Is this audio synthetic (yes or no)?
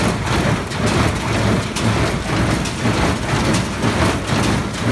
no